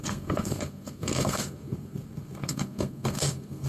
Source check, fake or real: fake